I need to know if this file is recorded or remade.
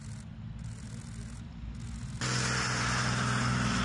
recorded